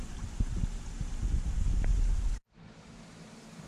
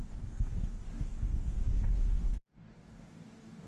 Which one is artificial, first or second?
second